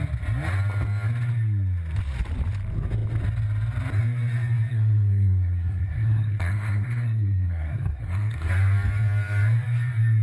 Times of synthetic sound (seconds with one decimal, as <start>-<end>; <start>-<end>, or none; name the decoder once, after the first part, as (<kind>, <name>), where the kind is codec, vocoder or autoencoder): 4.7-8.5 (codec, SNAC)